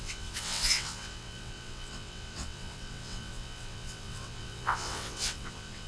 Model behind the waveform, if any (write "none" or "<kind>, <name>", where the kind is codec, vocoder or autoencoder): vocoder, WaveNeXt